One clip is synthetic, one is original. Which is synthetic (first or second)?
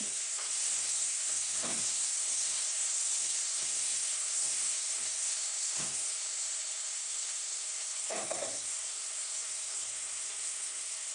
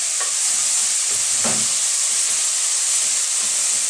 first